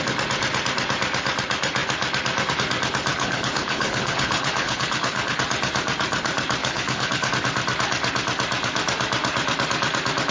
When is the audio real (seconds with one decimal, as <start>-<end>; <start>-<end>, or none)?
0.0-3.1; 5.4-6.6; 7.3-10.3